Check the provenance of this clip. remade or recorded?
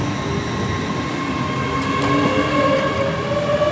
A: recorded